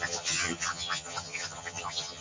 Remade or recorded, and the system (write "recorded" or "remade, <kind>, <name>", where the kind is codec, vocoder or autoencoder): remade, vocoder, HiFi-GAN